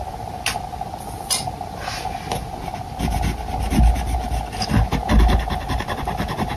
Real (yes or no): yes